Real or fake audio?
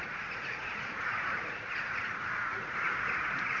fake